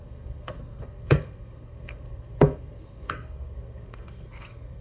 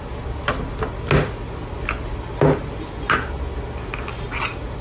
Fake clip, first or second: first